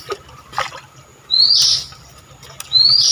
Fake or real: real